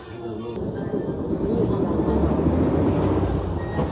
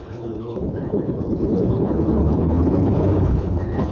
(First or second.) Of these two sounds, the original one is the first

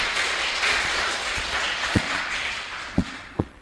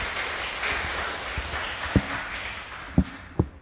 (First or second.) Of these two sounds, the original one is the second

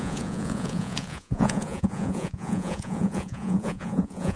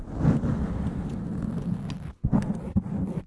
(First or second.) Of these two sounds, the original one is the second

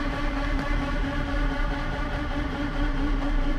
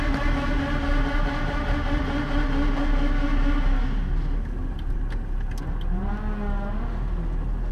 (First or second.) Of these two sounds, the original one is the second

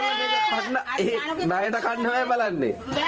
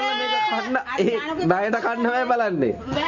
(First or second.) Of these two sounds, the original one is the second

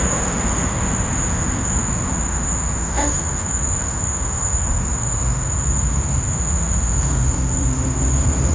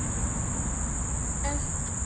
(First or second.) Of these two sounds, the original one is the second